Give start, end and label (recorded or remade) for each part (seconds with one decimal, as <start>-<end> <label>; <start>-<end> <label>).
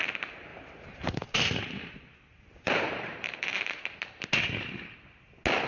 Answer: 0.0-0.5 recorded; 0.5-3.7 remade; 3.7-5.7 recorded